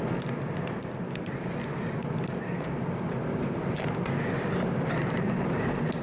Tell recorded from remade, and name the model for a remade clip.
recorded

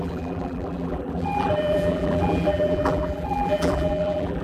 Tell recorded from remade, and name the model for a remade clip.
remade, vocoder, BigVGAN v2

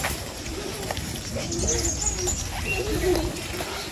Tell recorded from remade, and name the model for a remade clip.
recorded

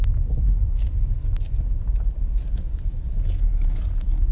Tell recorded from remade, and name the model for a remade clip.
recorded